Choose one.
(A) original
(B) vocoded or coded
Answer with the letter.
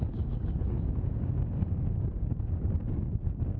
B